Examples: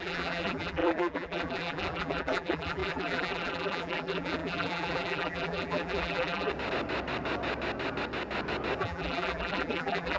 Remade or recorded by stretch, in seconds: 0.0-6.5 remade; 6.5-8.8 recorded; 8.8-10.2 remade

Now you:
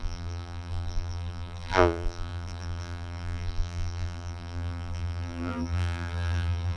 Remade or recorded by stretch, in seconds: 0.0-6.8 remade

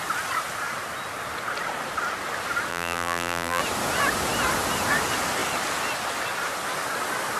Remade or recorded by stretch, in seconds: 0.0-2.7 recorded; 2.7-3.6 remade; 3.6-7.4 recorded

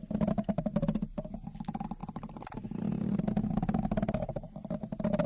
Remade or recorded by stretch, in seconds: 0.0-5.3 recorded

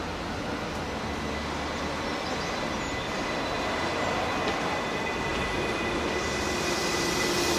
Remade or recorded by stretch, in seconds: 0.0-7.6 recorded

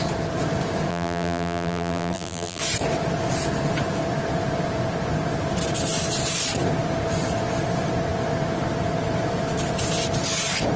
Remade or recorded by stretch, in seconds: 0.0-0.9 recorded; 0.9-2.6 remade; 2.6-10.8 recorded

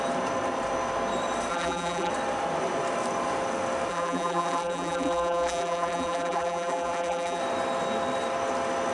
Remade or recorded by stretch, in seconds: 0.0-1.5 recorded; 1.5-2.1 remade; 2.1-3.9 recorded; 3.9-7.4 remade; 7.4-8.9 recorded